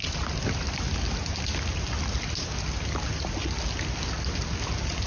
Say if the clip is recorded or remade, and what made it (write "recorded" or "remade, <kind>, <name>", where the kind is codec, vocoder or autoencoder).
recorded